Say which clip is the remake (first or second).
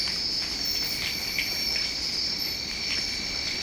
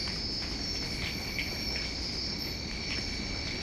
first